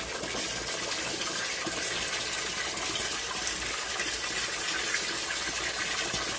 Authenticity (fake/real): real